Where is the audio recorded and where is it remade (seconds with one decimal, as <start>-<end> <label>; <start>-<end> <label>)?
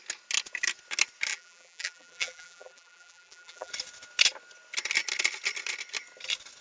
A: 0.0-1.3 recorded; 1.3-3.7 remade; 3.7-6.6 recorded